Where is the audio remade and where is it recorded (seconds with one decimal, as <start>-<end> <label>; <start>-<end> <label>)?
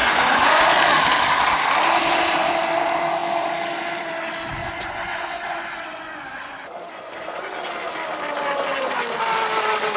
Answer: 0.0-0.6 remade; 0.6-4.6 recorded; 4.6-7.7 remade; 7.7-10.0 recorded